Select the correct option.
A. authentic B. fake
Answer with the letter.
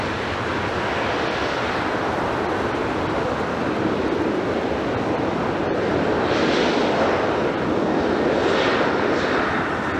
A